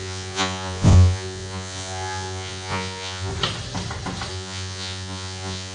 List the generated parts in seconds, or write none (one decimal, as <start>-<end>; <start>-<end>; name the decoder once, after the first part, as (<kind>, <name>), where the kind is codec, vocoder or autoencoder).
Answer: 0.0-3.3 (vocoder, Vocos); 4.3-5.7